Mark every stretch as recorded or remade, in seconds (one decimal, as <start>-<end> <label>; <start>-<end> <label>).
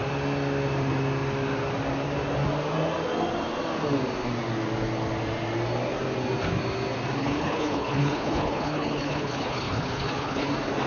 0.0-7.2 recorded; 7.2-10.5 remade; 10.5-10.9 recorded